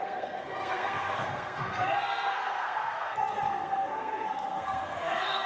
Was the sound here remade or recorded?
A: remade